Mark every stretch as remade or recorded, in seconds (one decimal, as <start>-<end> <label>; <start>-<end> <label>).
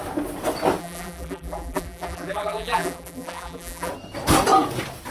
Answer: 0.0-0.8 recorded; 0.8-3.9 remade; 3.9-5.1 recorded